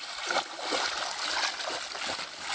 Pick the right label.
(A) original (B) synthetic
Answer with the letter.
A